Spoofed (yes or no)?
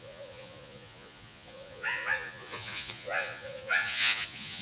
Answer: yes